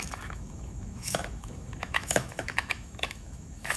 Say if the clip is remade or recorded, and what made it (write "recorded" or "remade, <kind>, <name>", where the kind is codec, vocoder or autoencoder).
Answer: remade, autoencoder, DAC-VAE